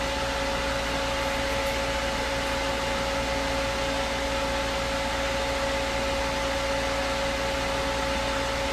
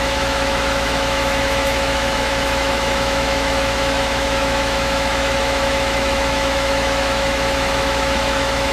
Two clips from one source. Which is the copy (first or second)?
second